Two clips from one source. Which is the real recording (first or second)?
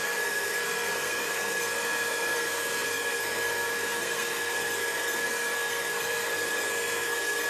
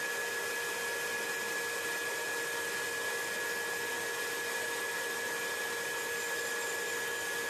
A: second